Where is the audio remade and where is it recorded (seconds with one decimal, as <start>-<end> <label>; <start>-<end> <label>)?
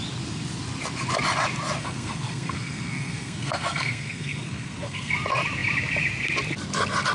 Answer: 0.0-1.8 recorded; 1.8-5.1 remade; 5.1-7.1 recorded